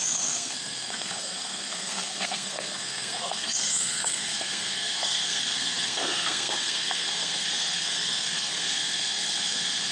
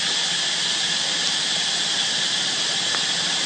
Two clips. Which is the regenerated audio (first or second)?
first